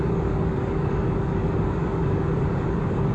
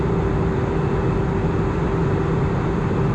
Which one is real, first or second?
second